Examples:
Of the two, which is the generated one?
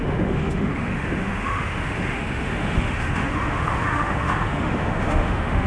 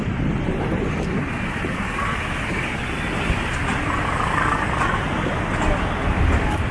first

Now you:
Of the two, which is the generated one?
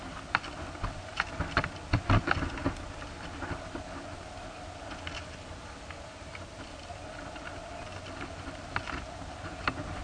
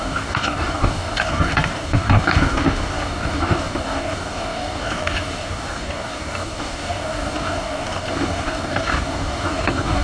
second